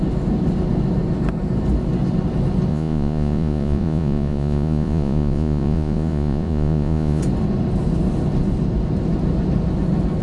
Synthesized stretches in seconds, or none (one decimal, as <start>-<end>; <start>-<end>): 2.7-7.2